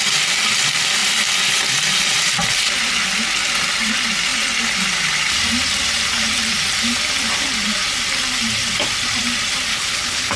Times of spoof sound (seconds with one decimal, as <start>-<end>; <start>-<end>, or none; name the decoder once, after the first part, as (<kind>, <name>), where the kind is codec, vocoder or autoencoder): 9.7-10.4 (codec, HILCodec)